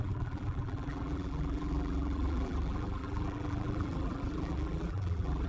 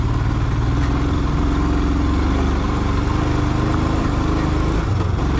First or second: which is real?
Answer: second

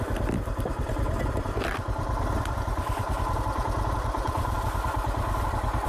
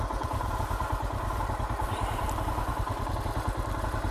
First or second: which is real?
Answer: second